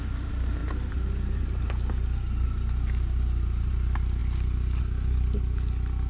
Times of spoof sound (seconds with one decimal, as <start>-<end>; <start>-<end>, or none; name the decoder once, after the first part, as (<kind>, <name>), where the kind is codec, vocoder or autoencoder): none